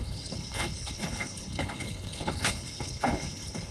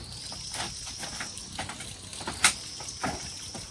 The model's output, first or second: first